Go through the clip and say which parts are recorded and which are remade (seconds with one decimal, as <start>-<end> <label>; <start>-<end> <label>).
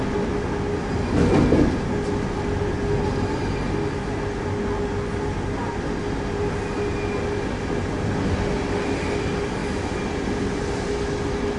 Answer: 0.0-11.6 recorded